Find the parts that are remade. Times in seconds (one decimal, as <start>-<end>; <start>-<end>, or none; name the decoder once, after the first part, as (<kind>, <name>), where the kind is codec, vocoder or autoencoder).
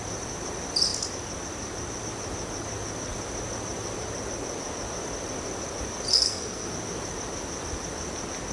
6.1-6.7 (codec, SNAC)